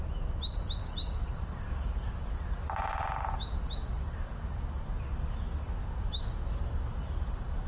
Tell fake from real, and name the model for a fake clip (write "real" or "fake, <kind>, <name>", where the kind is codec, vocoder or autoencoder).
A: real